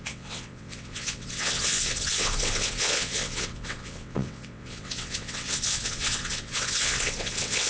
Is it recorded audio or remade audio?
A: remade